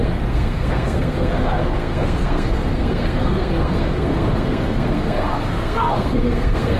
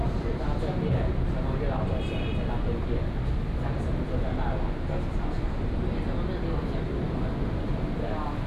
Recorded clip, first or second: second